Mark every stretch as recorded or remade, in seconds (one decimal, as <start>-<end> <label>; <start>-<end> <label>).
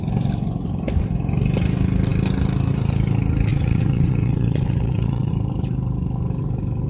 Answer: 0.0-3.5 recorded; 3.5-5.3 remade; 5.3-6.9 recorded